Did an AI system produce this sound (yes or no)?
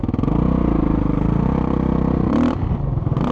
no